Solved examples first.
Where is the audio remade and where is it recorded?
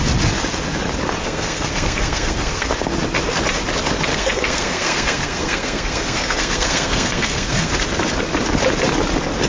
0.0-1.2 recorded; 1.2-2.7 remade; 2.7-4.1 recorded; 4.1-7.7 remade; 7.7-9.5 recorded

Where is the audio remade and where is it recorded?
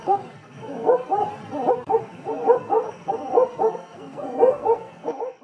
0.0-1.2 remade; 1.2-1.7 recorded; 1.7-5.4 remade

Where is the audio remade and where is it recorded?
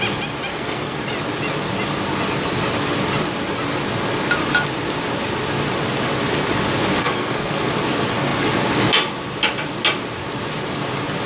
0.0-0.5 recorded; 0.5-1.0 remade; 1.0-7.0 recorded; 7.0-7.7 remade; 7.7-11.3 recorded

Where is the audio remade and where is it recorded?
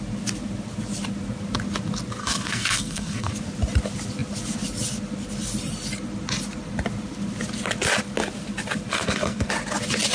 0.0-2.2 recorded; 2.2-3.3 remade; 3.3-8.9 recorded; 8.9-9.5 remade; 9.5-10.1 recorded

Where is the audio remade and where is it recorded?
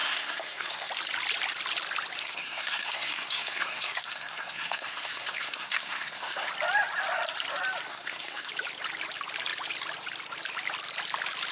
0.0-0.9 remade; 0.9-2.2 recorded; 2.2-6.5 remade; 6.5-7.9 recorded; 7.9-8.5 remade; 8.5-11.5 recorded